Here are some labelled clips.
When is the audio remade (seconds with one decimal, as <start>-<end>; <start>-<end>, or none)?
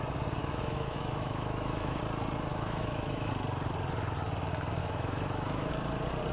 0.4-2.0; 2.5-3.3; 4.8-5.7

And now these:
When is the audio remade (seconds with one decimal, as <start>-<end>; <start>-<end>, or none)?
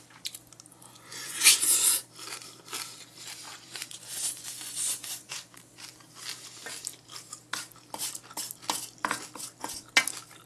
0.7-1.8; 3.5-5.6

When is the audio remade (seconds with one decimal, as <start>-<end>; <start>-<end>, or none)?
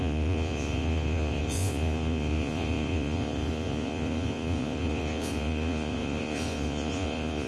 0.0-7.5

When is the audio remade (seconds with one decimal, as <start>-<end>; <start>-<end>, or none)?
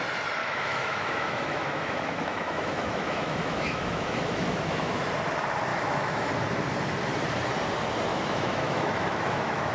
0.4-5.1; 5.7-6.3; 8.1-9.7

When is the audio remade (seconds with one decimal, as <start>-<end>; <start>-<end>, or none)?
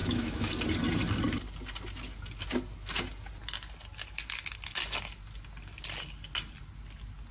0.0-0.5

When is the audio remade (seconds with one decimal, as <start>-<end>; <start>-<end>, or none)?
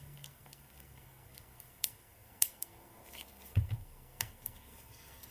0.0-5.3